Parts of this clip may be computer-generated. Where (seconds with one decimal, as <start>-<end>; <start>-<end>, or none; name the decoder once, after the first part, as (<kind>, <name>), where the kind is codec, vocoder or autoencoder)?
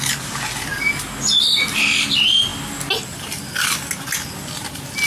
none